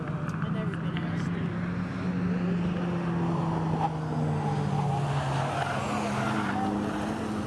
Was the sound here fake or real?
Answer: real